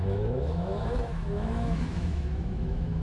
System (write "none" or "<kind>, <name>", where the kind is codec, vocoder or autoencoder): autoencoder, DAC-VAE